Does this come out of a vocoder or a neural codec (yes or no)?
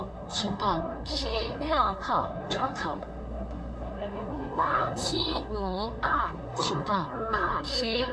yes